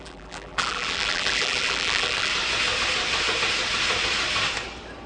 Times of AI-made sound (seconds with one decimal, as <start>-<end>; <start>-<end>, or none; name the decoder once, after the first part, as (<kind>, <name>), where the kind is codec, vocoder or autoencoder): 0.0-2.3 (vocoder, BigVGAN v2)